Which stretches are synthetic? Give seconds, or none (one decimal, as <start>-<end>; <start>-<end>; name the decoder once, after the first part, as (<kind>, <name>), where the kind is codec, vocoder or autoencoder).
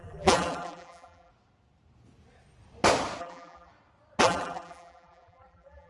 0.0-1.3 (vocoder, BigVGAN v2); 3.2-3.7; 4.2-5.9